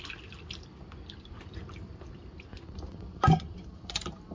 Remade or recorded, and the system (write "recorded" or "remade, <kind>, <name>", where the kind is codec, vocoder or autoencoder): recorded